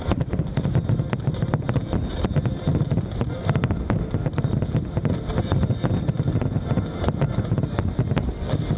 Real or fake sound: real